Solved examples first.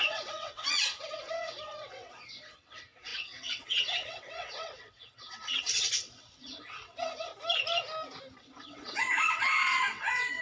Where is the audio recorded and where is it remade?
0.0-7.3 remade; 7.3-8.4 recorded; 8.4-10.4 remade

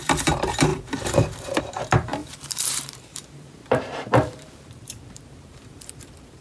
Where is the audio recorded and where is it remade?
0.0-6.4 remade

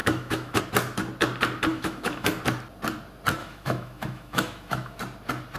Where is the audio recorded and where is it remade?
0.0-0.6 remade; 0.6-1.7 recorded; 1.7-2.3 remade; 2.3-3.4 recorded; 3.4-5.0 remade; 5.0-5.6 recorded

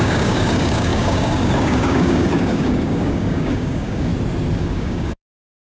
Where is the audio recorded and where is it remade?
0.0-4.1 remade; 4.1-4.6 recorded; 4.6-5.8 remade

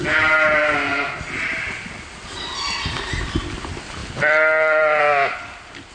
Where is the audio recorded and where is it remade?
0.0-5.9 recorded